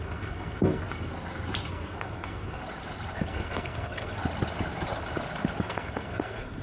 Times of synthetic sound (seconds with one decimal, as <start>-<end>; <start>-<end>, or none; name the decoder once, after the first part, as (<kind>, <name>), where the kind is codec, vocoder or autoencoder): 0.0-1.1 (codec, SNAC); 1.7-2.6; 3.2-4.2; 5.6-6.6